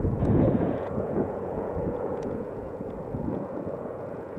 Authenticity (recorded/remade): remade